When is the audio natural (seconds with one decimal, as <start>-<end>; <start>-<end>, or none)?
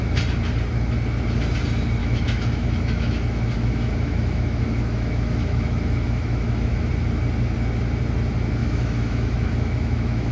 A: 0.0-2.0; 6.9-8.6